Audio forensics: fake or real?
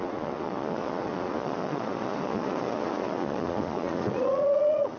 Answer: fake